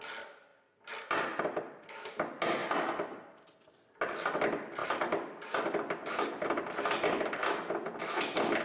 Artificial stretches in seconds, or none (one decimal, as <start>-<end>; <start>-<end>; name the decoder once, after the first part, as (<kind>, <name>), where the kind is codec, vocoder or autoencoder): 0.5-1.4 (vocoder, BigVGAN v2); 4.8-7.0